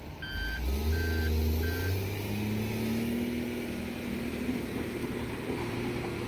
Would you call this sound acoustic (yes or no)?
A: yes